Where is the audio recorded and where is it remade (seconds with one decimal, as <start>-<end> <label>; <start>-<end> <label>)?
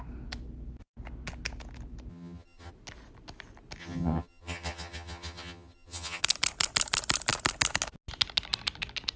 0.0-2.1 recorded; 2.1-2.7 remade; 2.7-3.8 recorded; 3.8-6.2 remade; 6.2-9.2 recorded